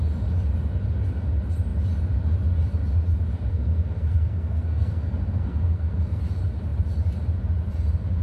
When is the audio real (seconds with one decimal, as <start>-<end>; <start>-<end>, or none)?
0.0-3.5; 6.2-8.2